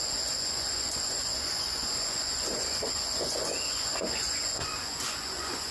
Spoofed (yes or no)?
yes